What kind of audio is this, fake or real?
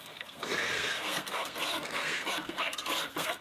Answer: fake